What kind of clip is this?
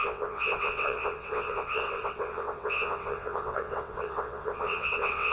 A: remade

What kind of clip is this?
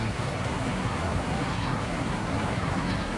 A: remade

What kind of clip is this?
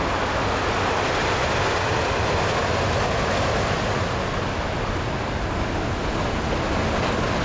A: recorded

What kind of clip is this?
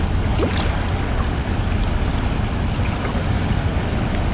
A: recorded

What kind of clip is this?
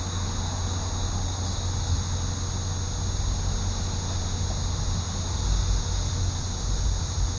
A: recorded